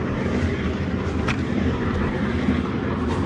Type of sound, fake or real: fake